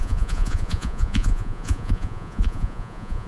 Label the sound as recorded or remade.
remade